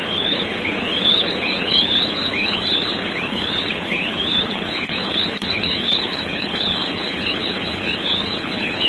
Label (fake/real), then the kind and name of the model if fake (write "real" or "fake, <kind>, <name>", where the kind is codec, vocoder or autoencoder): fake, codec, HILCodec